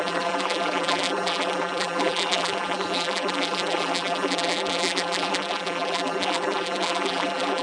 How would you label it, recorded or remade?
remade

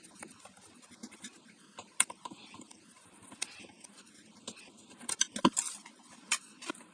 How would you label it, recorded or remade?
recorded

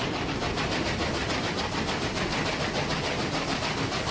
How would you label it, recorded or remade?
recorded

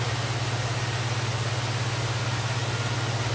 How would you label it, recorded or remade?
recorded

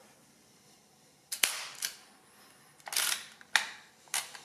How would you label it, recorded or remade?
recorded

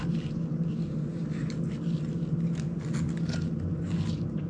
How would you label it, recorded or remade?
recorded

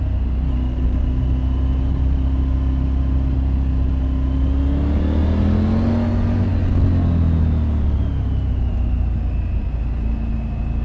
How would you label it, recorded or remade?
recorded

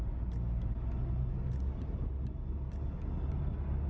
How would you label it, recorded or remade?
recorded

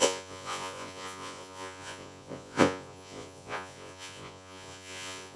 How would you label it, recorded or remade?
remade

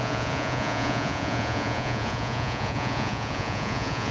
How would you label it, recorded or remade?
remade